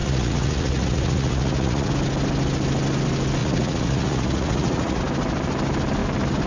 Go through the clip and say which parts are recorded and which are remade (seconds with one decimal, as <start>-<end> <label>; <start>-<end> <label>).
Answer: 0.0-1.9 remade; 1.9-3.4 recorded; 3.4-5.0 remade; 5.0-6.5 recorded